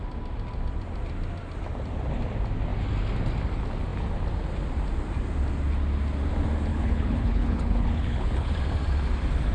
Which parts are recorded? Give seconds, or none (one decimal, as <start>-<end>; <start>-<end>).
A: 0.0-6.7; 8.5-9.5

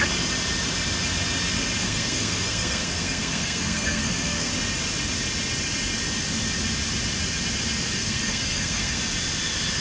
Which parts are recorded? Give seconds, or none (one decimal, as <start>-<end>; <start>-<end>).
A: 0.0-1.8; 4.5-8.0; 9.0-9.8

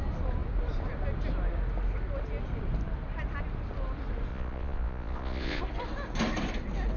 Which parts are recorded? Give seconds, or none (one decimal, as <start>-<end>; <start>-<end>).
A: 0.0-4.3; 5.6-7.0

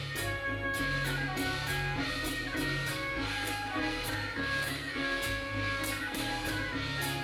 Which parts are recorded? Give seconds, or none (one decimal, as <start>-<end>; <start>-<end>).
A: 0.0-2.9; 6.5-7.2

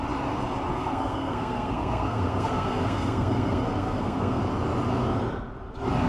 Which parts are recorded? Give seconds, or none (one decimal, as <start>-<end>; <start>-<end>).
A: 0.0-0.7; 4.4-6.1

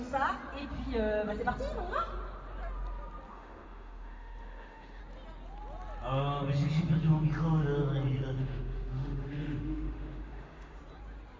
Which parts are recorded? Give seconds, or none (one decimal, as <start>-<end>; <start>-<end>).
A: 0.0-3.3; 5.0-8.4; 10.8-11.4

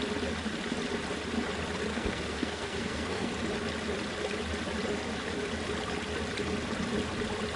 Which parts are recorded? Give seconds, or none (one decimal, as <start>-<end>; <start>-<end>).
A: 0.0-1.9; 3.3-7.6

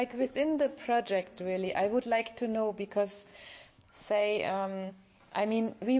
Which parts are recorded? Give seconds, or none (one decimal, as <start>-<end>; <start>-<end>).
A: 1.3-2.0